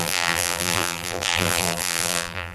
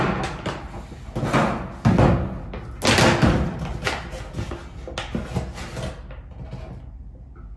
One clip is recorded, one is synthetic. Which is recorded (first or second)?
second